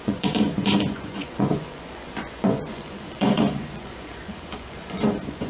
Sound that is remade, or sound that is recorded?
remade